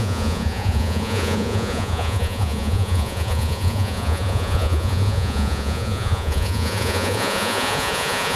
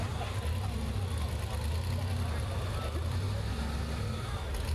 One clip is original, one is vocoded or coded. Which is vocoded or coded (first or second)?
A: first